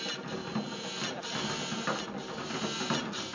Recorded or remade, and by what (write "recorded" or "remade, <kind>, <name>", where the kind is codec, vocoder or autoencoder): recorded